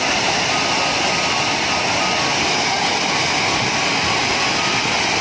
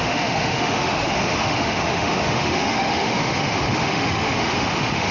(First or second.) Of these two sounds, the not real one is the second